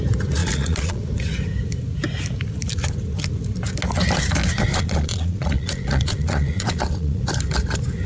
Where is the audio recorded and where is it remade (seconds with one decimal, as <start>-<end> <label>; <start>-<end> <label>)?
0.0-0.4 recorded; 0.4-1.0 remade; 1.0-4.7 recorded; 4.7-7.2 remade; 7.2-8.1 recorded